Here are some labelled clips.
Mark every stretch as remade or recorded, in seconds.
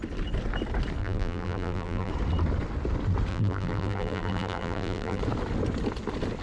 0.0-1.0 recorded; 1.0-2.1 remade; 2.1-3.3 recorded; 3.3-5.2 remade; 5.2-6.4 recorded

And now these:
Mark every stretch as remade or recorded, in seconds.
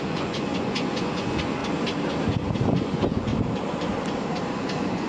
0.0-1.6 remade; 1.6-2.7 recorded; 2.7-3.3 remade; 3.3-4.5 recorded; 4.5-5.1 remade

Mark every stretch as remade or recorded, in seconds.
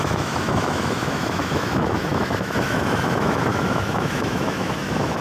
0.0-5.2 remade